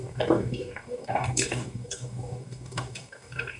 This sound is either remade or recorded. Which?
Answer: remade